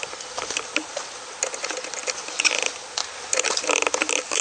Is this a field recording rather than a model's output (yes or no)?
yes